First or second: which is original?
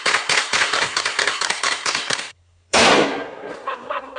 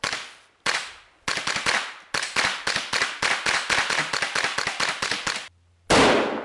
second